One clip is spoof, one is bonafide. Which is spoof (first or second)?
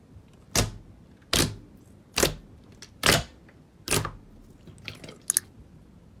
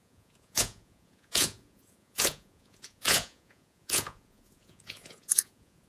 second